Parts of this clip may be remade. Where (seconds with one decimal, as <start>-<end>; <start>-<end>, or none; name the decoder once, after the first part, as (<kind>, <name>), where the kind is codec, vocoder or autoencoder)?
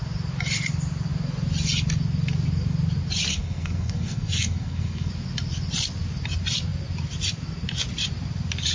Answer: 3.3-5.1 (codec, SNAC)